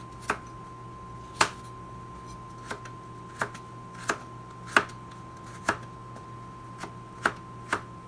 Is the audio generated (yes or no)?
no